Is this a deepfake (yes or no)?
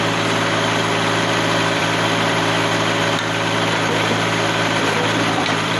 yes